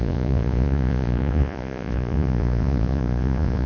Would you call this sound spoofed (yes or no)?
yes